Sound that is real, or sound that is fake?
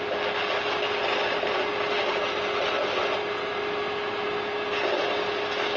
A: real